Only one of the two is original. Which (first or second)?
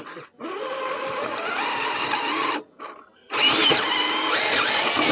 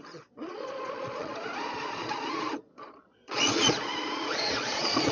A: first